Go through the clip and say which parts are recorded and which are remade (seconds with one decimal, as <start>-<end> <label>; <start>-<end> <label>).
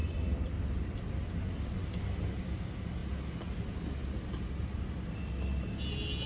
0.0-1.3 remade; 1.3-6.3 recorded